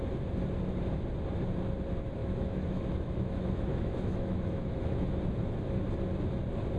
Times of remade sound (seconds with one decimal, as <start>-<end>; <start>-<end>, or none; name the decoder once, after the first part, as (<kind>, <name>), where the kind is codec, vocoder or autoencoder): 2.2-5.2 (autoencoder, DAC-VAE)